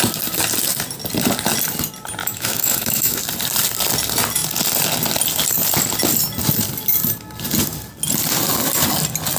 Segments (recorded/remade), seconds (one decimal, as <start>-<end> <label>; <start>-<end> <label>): 0.0-2.2 recorded; 2.2-3.2 remade; 3.2-9.4 recorded